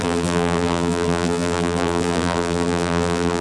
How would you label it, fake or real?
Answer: fake